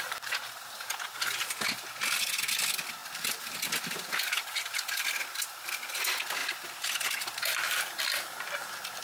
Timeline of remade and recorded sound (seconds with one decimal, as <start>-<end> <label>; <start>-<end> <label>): 0.0-3.0 recorded; 3.0-5.7 remade; 5.7-9.0 recorded